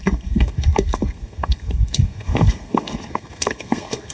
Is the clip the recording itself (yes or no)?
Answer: no